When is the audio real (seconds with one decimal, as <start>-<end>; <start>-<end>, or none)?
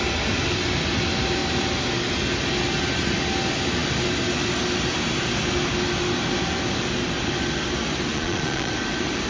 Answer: 0.0-8.1; 8.7-9.3